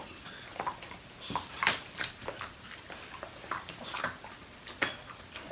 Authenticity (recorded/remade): recorded